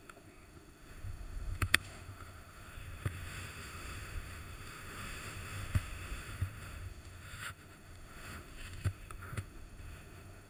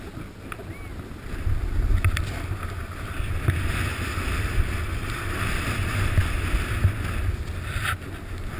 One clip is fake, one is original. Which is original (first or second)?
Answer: second